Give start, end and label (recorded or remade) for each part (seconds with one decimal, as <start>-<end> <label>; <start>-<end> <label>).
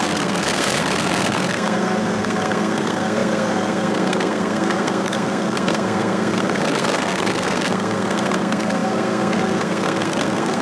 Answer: 0.0-10.6 remade